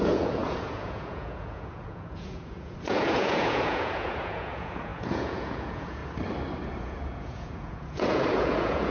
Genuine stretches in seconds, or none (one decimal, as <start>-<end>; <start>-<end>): 6.0-6.8